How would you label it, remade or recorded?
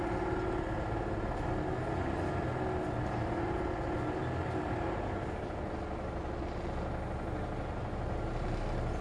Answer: recorded